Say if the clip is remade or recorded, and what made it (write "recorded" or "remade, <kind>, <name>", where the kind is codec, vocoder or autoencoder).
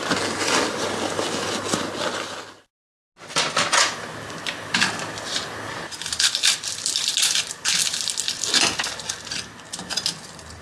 recorded